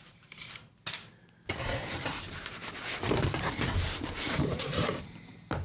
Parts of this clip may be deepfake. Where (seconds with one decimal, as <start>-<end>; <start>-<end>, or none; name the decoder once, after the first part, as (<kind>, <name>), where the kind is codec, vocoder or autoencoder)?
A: 0.0-0.7 (vocoder, BigVGAN v2); 1.6-2.6; 3.5-5.6